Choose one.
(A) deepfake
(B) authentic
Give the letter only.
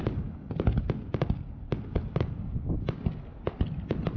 B